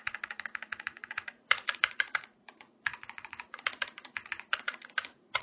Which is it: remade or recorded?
remade